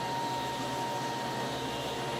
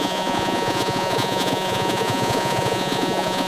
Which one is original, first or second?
first